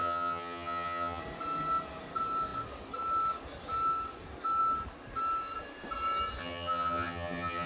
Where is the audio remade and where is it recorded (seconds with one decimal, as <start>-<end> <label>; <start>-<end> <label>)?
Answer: 0.0-1.2 remade; 1.2-6.4 recorded; 6.4-7.7 remade